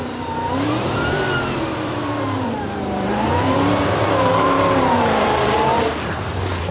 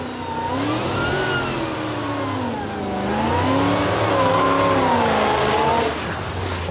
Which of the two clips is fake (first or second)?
first